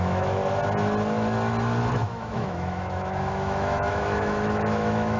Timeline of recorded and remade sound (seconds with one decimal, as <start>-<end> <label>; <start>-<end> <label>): 0.0-0.4 remade; 0.4-1.9 recorded; 1.9-5.2 remade

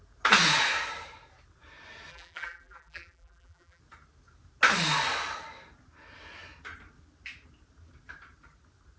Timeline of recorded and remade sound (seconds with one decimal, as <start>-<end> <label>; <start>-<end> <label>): 0.0-2.1 recorded; 2.1-3.8 remade; 3.8-9.0 recorded

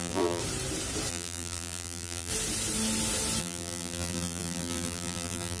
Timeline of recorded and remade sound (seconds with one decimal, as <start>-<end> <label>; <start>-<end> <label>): 0.0-0.4 remade; 0.4-1.1 recorded; 1.1-2.3 remade; 2.3-3.4 recorded; 3.4-5.6 remade